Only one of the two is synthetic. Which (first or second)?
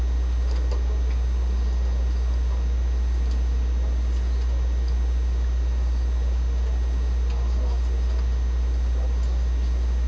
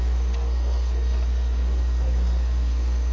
second